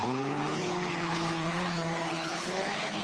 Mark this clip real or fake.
fake